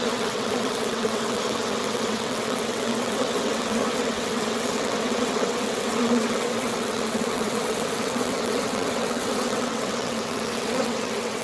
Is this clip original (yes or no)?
no